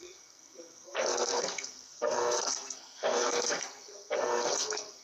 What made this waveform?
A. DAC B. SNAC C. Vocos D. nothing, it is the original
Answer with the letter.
B